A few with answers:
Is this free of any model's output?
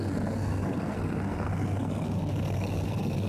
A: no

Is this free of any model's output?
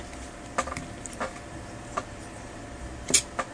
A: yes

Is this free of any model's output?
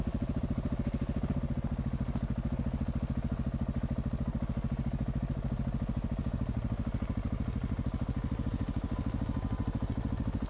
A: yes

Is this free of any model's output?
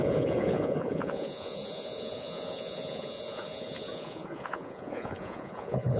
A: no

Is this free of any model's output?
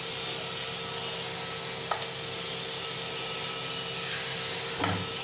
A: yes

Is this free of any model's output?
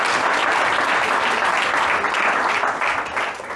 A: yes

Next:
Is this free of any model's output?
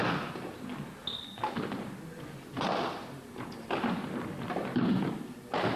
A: yes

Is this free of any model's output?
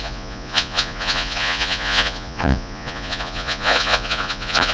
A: no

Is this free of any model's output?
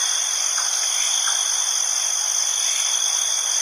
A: yes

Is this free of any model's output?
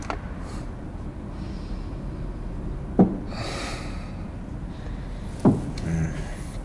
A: yes